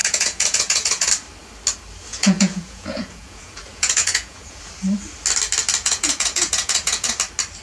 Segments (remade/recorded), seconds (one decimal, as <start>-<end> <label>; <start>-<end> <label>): 0.0-1.1 remade; 1.1-2.1 recorded; 2.1-4.6 remade; 4.6-5.8 recorded; 5.8-7.1 remade; 7.1-7.6 recorded